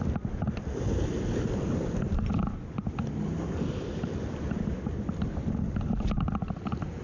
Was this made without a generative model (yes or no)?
yes